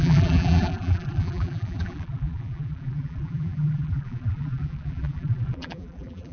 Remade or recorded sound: remade